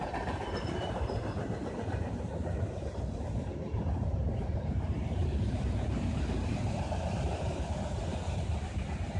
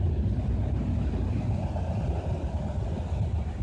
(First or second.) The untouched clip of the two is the second